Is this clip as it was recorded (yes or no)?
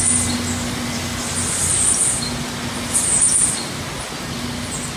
yes